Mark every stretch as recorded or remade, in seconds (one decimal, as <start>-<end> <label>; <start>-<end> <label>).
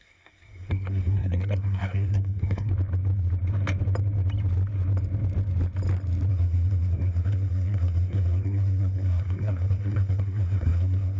0.0-2.7 remade; 2.7-6.3 recorded; 6.3-11.2 remade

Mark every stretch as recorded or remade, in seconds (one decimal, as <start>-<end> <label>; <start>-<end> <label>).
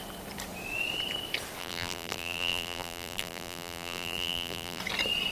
0.0-1.6 recorded; 1.6-4.8 remade; 4.8-5.3 recorded